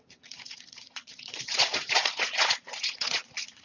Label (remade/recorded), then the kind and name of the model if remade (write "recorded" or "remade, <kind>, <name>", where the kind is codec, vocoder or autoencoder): remade, vocoder, Vocos